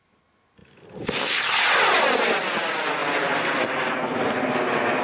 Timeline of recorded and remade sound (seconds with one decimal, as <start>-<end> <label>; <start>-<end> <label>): 0.0-5.0 recorded